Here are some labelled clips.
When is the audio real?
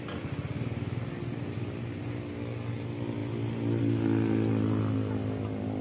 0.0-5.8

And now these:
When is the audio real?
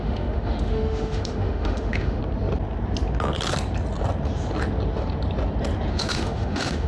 2.2-5.9